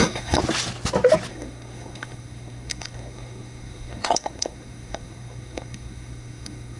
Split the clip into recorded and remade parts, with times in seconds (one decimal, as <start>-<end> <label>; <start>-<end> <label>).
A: 0.0-0.4 remade; 0.4-1.3 recorded; 1.3-6.8 remade